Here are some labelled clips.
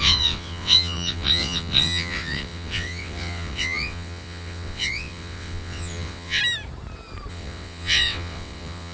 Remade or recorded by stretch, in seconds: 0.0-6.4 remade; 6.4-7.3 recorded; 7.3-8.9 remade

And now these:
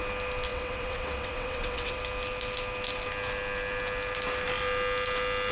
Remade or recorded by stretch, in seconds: 0.0-0.5 recorded; 0.5-2.0 remade; 2.0-5.5 recorded

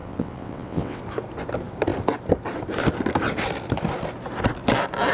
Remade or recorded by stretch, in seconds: 0.0-1.0 remade; 1.0-5.1 recorded